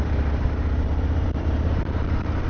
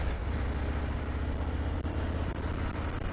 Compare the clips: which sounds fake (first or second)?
first